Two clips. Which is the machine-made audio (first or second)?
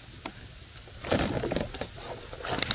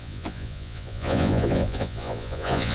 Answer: second